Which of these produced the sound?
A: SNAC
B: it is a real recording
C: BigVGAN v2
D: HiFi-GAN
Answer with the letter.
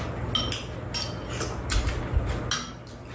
B